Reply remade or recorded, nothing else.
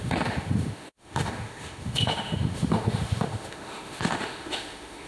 remade